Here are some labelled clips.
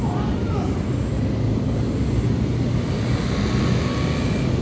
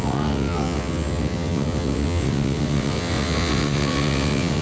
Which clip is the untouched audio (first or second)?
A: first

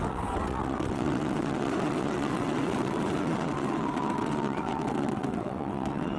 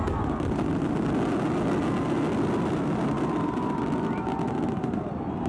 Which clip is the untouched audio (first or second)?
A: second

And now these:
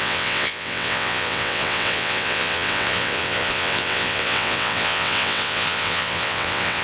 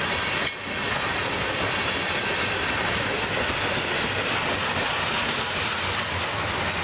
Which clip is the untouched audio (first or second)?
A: second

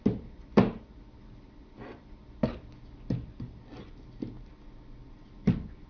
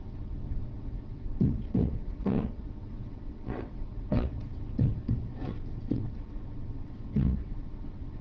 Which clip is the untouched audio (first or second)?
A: first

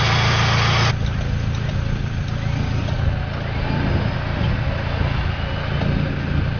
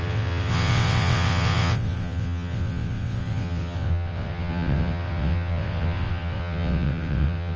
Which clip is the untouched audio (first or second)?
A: first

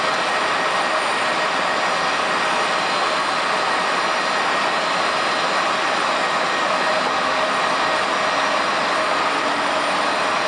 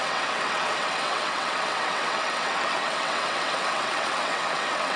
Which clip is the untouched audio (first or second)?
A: first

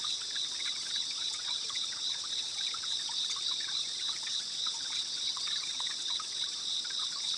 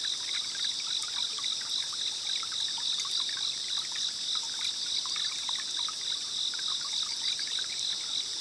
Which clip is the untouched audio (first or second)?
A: second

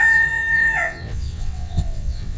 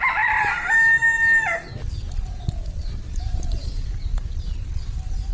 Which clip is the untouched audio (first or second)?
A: second